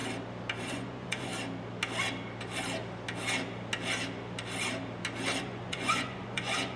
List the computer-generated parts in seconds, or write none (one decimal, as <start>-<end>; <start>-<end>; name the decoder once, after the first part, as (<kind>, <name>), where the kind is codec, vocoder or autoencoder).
0.7-1.3 (vocoder, Vocos); 5.4-6.8